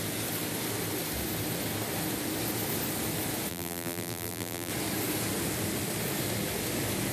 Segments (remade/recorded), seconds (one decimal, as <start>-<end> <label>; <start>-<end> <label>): 0.0-3.5 recorded; 3.5-4.7 remade; 4.7-7.1 recorded